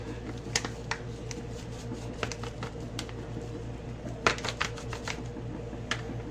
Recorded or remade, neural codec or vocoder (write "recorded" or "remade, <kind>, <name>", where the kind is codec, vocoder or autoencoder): recorded